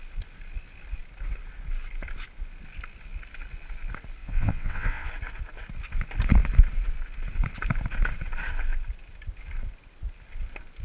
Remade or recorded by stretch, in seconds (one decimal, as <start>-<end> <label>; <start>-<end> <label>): 0.0-4.2 recorded; 4.2-5.1 remade; 5.1-10.8 recorded